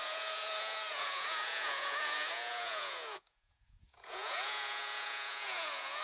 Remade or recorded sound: remade